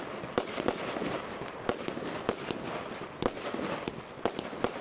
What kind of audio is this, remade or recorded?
recorded